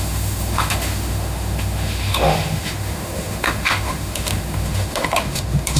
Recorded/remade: remade